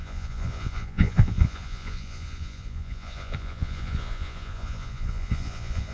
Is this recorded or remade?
remade